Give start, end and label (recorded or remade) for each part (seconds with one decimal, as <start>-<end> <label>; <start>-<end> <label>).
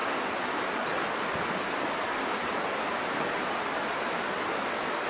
0.0-5.1 recorded